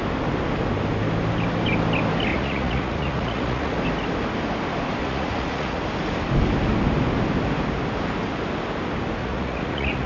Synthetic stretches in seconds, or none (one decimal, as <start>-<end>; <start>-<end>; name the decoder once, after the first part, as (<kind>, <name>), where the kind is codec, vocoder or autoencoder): 2.3-3.7 (vocoder, Vocos); 5.0-5.8; 9.2-10.1